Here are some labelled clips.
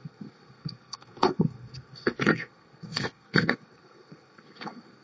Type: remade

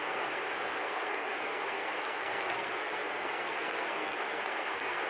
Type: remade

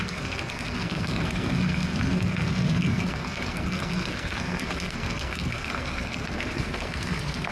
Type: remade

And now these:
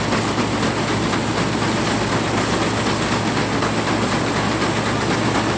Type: recorded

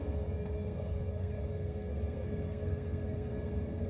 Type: remade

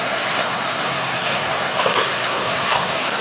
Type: remade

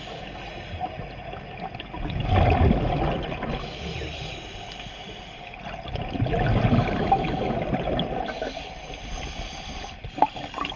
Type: recorded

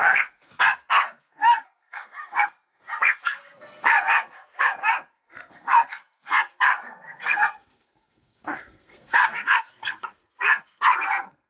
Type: remade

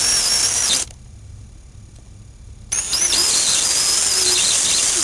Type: recorded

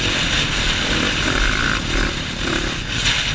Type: recorded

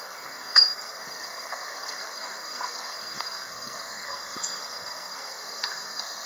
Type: remade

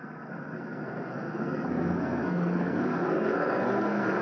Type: remade